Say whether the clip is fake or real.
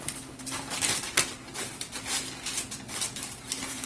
fake